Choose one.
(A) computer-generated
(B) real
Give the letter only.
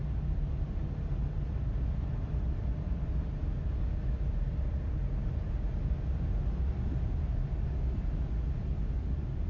B